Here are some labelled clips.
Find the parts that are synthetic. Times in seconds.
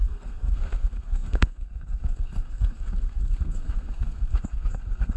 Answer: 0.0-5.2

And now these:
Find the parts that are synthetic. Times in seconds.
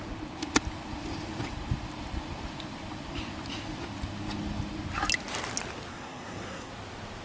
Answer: 5.9-6.7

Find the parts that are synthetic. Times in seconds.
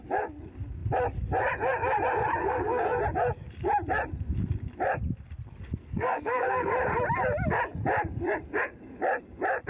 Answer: 2.4-3.0; 5.7-6.7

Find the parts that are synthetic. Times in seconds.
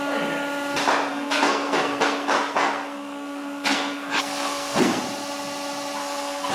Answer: 1.1-5.0; 6.0-6.5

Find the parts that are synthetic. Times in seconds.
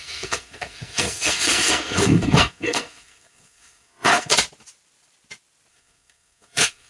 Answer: 0.0-4.3; 5.7-6.9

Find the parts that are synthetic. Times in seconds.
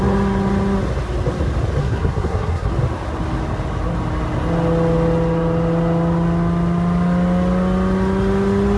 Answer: 1.8-2.7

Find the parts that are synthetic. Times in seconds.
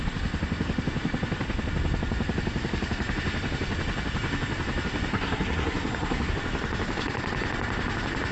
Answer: 5.1-6.3